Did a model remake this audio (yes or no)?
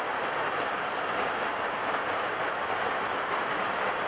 no